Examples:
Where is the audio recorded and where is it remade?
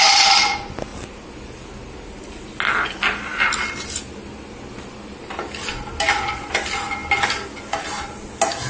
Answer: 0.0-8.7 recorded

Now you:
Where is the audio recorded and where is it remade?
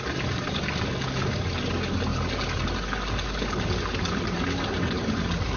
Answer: 0.0-5.6 recorded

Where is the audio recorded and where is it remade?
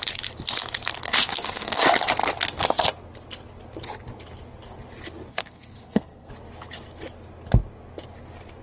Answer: 0.0-1.1 recorded; 1.1-1.8 remade; 1.8-5.3 recorded; 5.3-6.3 remade; 6.3-8.6 recorded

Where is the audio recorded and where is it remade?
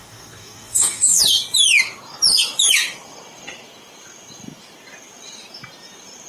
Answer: 0.0-1.2 remade; 1.2-6.3 recorded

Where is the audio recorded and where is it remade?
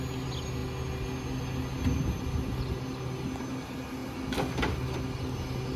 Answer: 0.0-5.8 recorded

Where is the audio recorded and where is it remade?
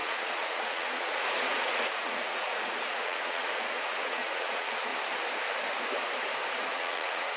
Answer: 0.0-4.9 remade; 4.9-6.6 recorded; 6.6-7.4 remade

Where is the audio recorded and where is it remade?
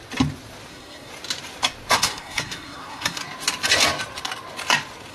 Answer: 0.0-0.7 recorded; 0.7-1.1 remade; 1.1-1.9 recorded; 1.9-3.2 remade; 3.2-5.1 recorded